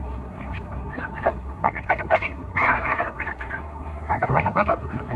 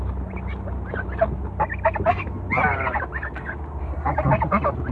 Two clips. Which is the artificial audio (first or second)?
first